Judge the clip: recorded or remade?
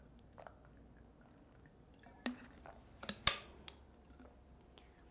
recorded